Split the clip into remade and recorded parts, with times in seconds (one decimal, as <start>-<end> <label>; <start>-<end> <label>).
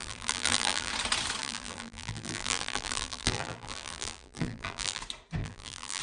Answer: 0.0-0.9 remade; 0.9-1.4 recorded; 1.4-5.0 remade; 5.0-5.4 recorded; 5.4-6.0 remade